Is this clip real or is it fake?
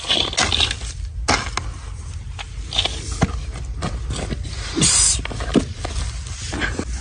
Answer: real